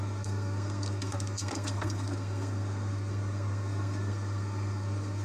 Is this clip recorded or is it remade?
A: remade